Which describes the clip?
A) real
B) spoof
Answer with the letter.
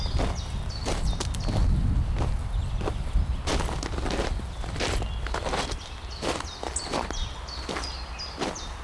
A